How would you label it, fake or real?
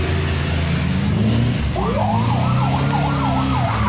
real